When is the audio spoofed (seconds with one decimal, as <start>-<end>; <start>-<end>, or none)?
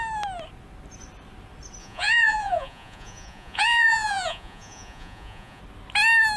1.8-5.6